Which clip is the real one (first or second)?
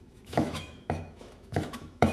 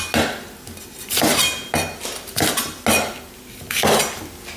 second